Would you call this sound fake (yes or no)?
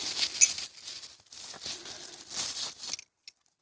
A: no